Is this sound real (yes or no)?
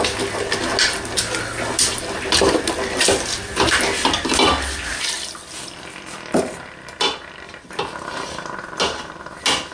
yes